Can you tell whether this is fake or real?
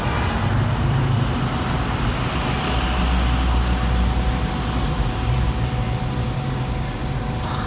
real